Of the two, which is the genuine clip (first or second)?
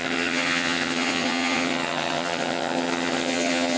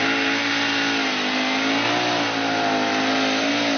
second